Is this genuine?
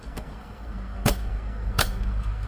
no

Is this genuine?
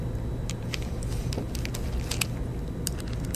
yes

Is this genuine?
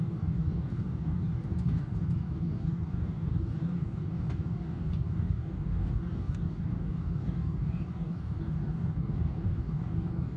no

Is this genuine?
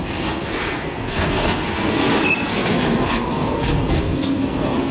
no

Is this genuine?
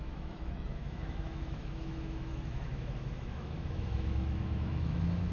no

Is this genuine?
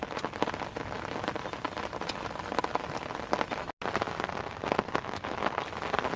yes